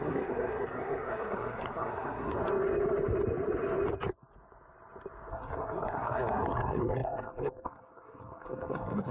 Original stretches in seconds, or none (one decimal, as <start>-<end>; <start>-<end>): 2.4-5.3